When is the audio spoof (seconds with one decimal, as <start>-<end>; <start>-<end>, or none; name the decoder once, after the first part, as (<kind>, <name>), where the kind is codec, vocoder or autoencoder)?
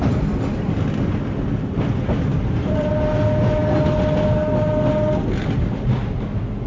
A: 2.3-2.9 (vocoder, BigVGAN v2)